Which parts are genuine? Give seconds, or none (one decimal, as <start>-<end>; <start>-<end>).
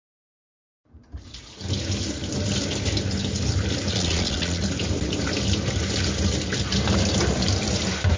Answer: 0.0-3.9; 4.6-8.2